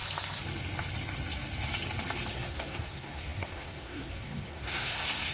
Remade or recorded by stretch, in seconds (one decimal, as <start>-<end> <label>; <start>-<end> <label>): 0.0-2.3 recorded; 2.3-5.3 remade